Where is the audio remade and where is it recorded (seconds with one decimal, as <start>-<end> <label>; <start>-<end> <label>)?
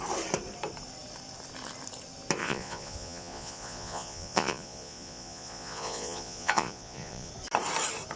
0.0-2.4 recorded; 2.4-7.3 remade; 7.3-8.2 recorded